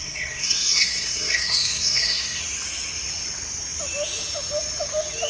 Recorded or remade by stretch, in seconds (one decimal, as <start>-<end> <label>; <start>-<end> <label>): 0.0-2.4 remade; 2.4-5.3 recorded